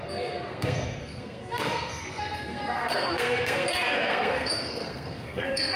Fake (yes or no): yes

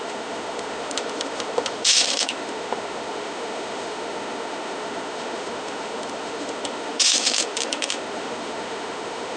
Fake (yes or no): yes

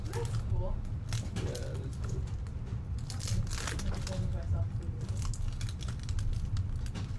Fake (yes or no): no